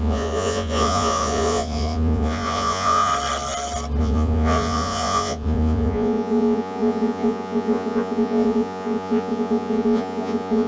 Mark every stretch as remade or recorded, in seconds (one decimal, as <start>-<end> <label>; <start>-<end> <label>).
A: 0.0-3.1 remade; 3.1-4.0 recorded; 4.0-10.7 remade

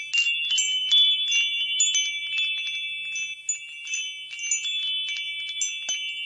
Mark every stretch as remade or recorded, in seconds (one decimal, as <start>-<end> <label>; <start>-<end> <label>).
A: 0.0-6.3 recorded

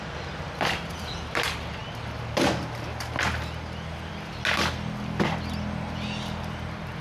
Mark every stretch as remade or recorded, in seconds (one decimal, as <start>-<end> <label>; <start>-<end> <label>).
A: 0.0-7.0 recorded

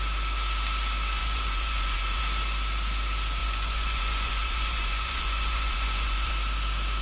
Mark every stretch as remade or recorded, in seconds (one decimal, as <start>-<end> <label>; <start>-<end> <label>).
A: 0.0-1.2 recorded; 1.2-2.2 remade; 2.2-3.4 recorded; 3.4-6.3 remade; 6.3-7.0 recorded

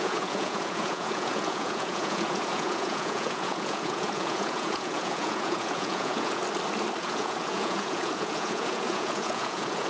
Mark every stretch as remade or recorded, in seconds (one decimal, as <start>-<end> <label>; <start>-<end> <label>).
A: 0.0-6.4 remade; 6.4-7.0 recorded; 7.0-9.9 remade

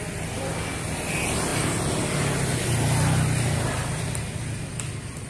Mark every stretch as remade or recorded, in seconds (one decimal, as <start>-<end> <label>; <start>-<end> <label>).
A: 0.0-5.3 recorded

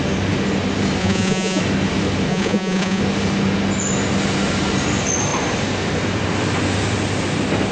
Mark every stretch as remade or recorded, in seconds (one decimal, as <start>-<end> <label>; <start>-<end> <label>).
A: 0.0-1.0 recorded; 1.0-1.6 remade; 1.6-2.3 recorded; 2.3-3.0 remade; 3.0-7.7 recorded